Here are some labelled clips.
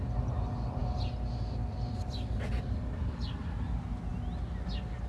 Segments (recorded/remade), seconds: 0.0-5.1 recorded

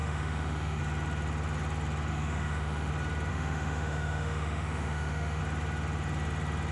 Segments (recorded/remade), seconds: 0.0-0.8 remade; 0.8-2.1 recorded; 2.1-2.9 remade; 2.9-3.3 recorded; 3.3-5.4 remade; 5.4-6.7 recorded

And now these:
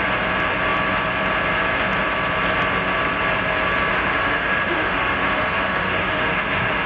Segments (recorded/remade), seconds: 0.0-3.9 recorded; 3.9-6.9 remade

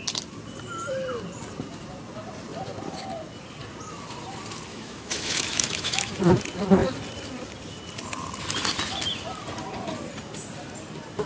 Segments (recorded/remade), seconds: 0.0-4.7 recorded; 4.7-6.1 remade; 6.1-11.3 recorded